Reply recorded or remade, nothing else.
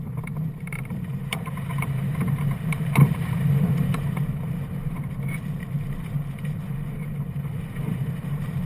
remade